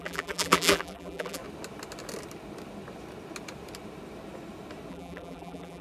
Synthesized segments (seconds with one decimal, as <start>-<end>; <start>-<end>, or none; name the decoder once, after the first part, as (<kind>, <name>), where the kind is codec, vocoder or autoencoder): 0.0-1.4 (vocoder, BigVGAN v2); 4.9-5.8